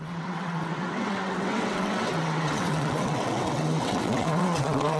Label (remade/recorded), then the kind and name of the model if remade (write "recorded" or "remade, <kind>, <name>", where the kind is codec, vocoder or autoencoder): remade, vocoder, WaveNeXt